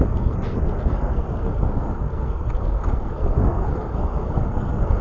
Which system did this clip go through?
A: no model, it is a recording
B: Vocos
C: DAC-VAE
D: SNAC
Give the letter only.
D